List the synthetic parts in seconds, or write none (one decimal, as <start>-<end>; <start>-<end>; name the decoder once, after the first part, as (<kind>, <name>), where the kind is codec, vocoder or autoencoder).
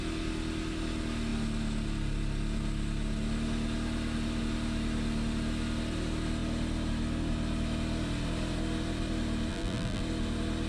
9.5-10.0 (vocoder, BigVGAN v2)